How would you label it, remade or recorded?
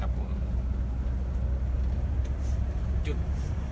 recorded